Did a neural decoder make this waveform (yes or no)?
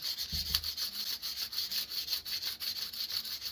no